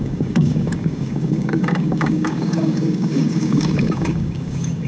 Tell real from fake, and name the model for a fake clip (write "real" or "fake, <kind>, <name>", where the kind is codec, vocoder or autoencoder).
fake, codec, DAC